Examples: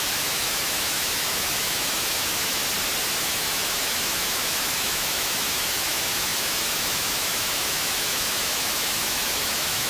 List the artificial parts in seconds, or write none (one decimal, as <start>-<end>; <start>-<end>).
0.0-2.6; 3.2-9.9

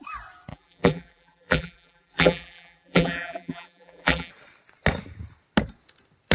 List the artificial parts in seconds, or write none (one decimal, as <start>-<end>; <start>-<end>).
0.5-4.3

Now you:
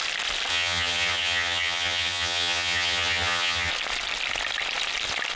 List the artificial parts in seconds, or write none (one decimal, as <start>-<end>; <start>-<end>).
0.5-3.7

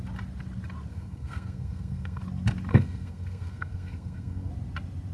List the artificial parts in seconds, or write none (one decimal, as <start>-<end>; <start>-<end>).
0.9-2.2; 2.7-4.5